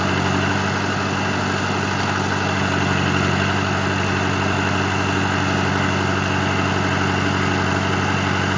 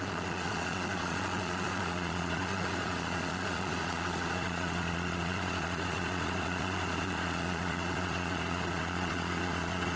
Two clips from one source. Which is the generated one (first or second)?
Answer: second